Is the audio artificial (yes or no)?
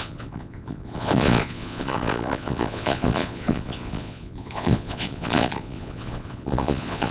yes